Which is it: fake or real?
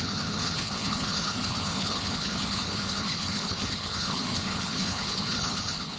fake